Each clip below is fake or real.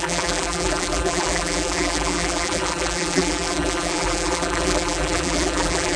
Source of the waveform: fake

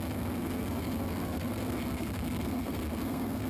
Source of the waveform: fake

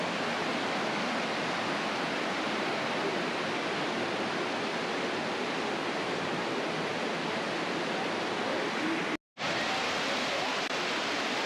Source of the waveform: real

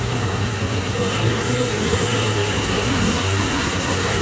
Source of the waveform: fake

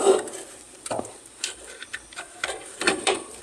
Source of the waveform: fake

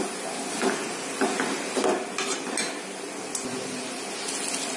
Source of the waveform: real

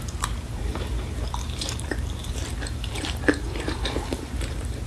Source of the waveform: fake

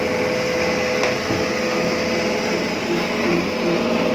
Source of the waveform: real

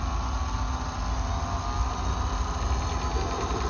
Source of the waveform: real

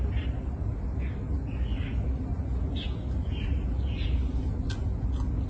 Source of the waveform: real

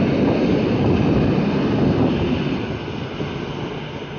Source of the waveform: real